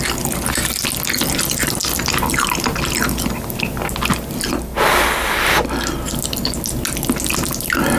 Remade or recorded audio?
recorded